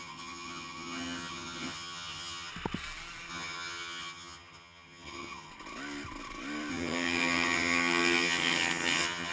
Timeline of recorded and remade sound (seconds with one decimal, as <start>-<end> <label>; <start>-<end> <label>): 0.0-2.5 remade; 2.5-3.3 recorded; 3.3-5.5 remade; 5.5-6.7 recorded; 6.7-9.3 remade